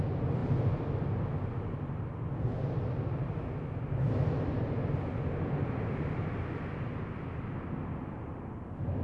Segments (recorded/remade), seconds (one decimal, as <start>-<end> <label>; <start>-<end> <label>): 0.0-9.0 recorded